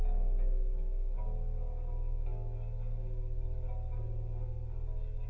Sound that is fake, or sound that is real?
real